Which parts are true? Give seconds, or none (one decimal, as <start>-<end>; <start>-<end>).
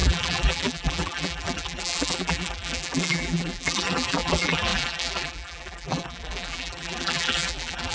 none